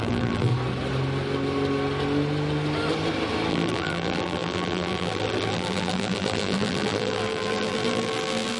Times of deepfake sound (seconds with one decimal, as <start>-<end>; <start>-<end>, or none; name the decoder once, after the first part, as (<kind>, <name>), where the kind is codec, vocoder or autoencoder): 0.0-0.5 (vocoder, BigVGAN v2); 3.5-8.6